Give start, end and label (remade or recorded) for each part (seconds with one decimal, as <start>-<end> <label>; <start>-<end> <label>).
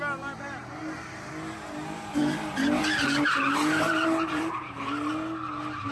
0.0-0.8 recorded; 0.8-1.3 remade; 1.3-2.2 recorded; 2.2-5.1 remade; 5.1-5.9 recorded